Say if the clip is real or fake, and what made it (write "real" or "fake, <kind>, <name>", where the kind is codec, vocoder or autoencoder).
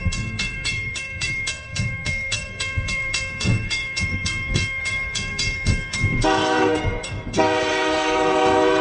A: fake, codec, SNAC